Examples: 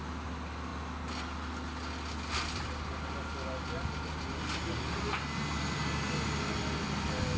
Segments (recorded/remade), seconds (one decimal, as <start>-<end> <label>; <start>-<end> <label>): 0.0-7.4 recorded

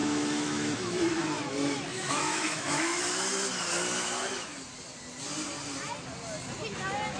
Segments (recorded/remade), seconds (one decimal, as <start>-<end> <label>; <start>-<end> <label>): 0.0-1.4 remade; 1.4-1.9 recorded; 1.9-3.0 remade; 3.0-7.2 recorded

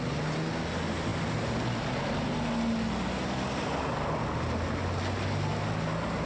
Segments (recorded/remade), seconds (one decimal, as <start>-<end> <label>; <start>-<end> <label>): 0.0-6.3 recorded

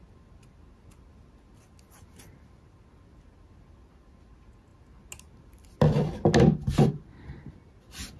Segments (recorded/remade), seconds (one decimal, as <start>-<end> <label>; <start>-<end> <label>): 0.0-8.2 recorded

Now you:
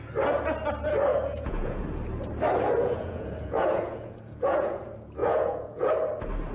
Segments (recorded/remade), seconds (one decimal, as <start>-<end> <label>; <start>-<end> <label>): 0.0-1.1 recorded; 1.1-1.8 remade; 1.8-2.8 recorded; 2.8-4.8 remade; 4.8-5.2 recorded; 5.2-5.9 remade; 5.9-6.5 recorded